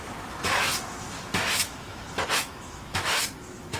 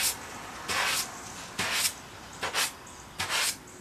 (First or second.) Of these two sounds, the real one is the second